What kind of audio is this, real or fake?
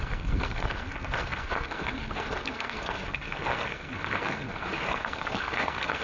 fake